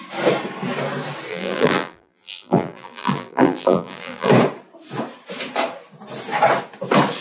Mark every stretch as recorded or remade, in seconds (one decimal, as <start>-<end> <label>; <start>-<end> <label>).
0.0-1.3 recorded; 1.3-4.3 remade; 4.3-7.2 recorded